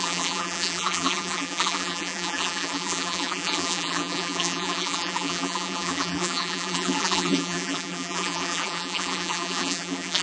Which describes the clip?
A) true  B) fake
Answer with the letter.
B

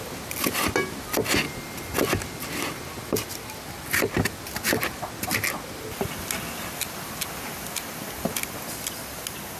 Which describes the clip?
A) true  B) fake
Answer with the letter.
A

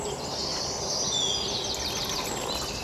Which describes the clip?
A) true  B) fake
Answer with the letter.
A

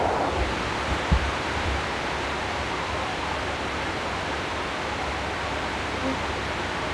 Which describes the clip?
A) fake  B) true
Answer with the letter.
B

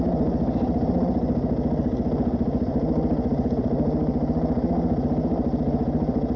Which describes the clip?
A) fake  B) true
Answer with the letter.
B